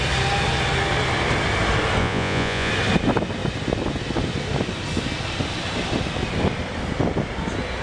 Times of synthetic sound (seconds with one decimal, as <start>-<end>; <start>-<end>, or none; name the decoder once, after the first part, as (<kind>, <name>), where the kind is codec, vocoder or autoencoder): 2.0-2.7 (vocoder, Vocos)